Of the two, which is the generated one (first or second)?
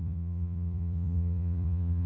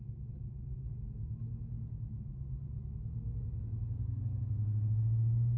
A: first